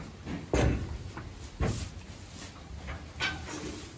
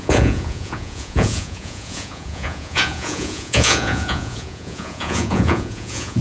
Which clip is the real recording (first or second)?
first